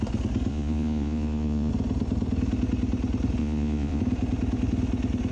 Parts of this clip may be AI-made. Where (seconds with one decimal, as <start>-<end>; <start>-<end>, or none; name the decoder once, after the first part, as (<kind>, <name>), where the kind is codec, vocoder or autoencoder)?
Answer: 0.5-1.7 (vocoder, Vocos); 3.4-4.0